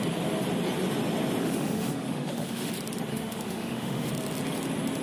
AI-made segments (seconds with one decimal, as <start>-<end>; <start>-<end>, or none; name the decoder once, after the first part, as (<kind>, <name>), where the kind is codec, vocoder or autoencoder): 1.4-2.7 (autoencoder, DAC-VAE); 3.1-4.1